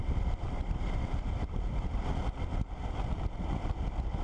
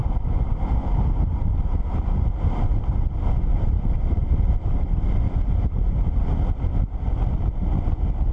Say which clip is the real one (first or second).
second